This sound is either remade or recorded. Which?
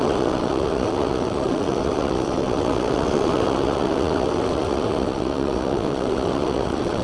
remade